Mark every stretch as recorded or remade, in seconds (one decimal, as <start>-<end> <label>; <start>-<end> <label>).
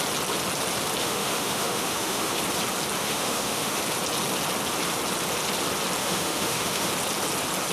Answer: 0.0-1.0 recorded; 1.0-2.4 remade; 2.4-3.0 recorded; 3.0-3.8 remade; 3.8-6.0 recorded; 6.0-6.9 remade; 6.9-7.7 recorded